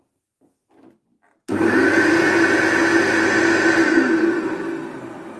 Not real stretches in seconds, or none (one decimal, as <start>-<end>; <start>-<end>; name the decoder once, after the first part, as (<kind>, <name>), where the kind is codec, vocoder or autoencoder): 3.8-4.5 (vocoder, BigVGAN v2)